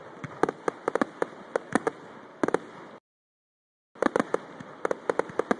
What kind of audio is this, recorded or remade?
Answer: recorded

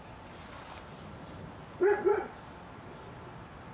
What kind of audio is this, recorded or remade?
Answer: recorded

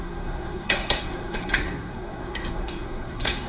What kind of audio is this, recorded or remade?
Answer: remade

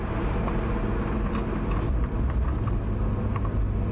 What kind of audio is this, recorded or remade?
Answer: recorded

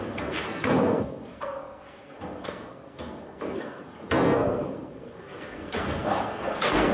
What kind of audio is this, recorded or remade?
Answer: remade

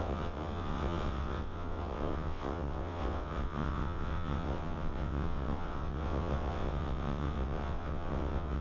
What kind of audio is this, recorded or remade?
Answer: remade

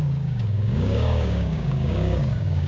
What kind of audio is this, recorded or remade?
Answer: remade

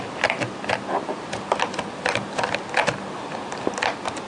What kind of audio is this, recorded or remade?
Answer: recorded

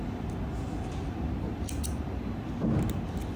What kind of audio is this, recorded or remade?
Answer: recorded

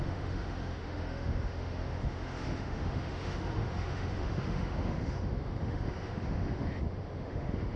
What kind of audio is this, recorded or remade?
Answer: remade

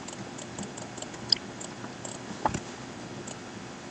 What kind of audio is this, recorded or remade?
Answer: recorded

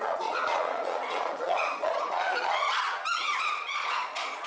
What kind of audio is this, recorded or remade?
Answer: remade